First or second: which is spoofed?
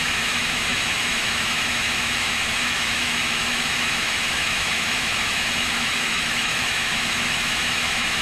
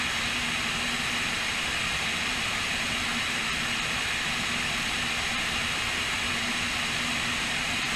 first